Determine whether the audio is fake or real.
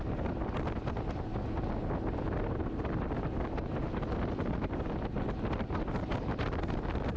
real